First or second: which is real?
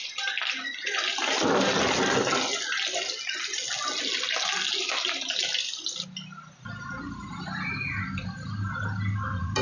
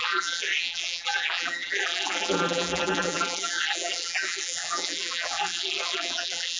first